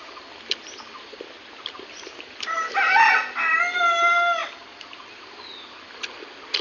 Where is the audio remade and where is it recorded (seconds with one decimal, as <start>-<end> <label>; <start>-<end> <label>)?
0.0-6.6 recorded